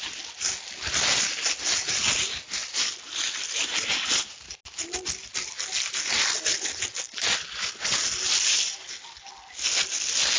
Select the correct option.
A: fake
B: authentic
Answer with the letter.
B